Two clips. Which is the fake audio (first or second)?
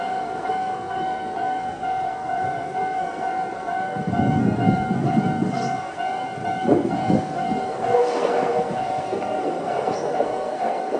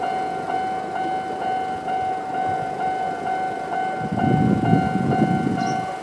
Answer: first